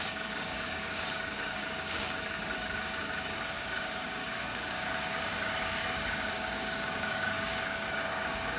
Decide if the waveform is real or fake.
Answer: fake